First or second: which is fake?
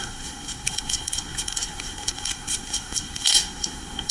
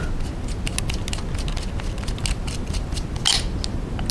first